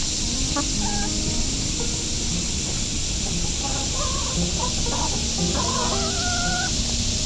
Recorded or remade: recorded